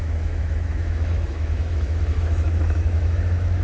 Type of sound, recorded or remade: remade